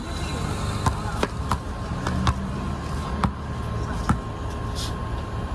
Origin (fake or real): real